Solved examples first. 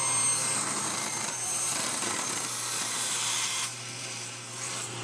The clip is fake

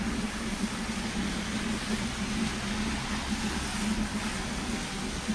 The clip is real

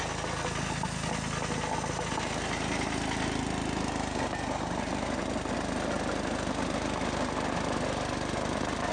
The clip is real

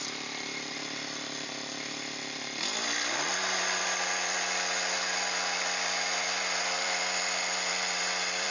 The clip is fake